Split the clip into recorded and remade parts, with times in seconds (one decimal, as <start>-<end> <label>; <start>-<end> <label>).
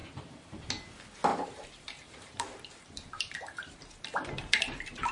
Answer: 0.0-0.6 remade; 0.6-1.3 recorded; 1.3-4.4 remade; 4.4-5.1 recorded